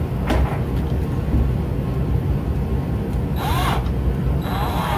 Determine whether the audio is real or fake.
real